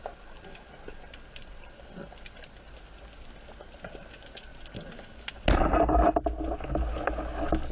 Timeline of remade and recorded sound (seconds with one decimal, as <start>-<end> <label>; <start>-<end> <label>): 0.0-7.7 recorded